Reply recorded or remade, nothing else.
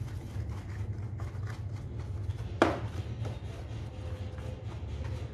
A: recorded